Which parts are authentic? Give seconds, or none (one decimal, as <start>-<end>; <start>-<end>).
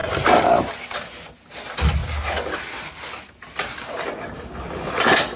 0.6-5.4